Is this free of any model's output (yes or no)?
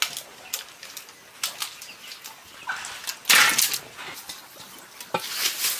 yes